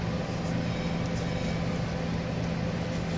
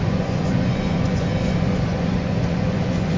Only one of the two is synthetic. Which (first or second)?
second